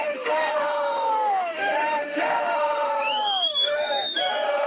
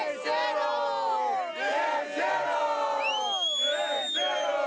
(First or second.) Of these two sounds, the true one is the second